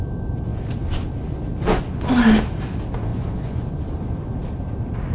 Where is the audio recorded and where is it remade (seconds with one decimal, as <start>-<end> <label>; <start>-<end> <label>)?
0.0-3.1 recorded; 3.1-3.6 remade; 3.6-5.1 recorded